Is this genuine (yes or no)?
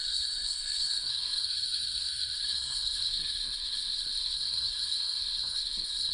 no